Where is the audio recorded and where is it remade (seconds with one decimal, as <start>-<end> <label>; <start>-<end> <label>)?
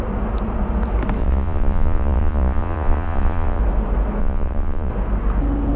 0.0-1.2 recorded; 1.2-3.6 remade; 3.6-4.2 recorded; 4.2-4.9 remade; 4.9-5.8 recorded